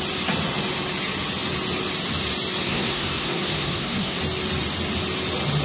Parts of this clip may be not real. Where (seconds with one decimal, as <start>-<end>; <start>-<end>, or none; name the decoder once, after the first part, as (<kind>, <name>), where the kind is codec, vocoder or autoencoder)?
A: 2.6-4.2 (codec, SNAC)